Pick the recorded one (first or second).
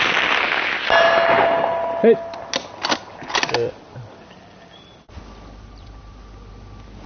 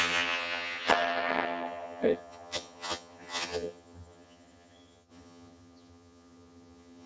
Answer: first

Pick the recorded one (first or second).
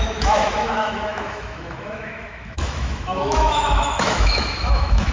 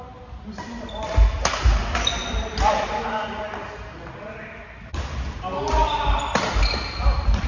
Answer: second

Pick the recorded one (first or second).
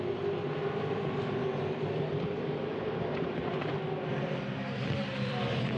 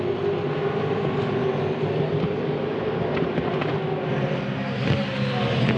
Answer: second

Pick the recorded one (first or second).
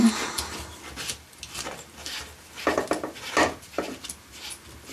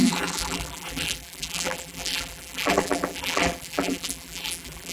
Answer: first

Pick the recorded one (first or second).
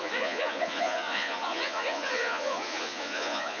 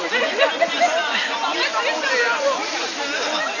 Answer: second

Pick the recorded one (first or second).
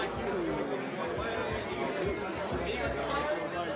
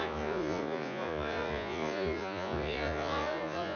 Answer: first